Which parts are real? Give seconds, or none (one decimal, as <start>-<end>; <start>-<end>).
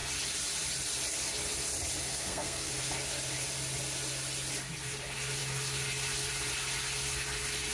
0.0-2.0; 2.7-7.7